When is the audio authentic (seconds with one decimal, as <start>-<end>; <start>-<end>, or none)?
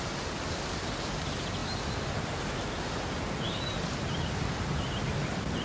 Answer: 0.0-5.6